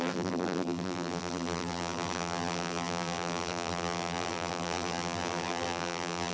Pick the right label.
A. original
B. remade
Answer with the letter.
B